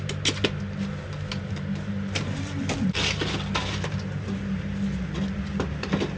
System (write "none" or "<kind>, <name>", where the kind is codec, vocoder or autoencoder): none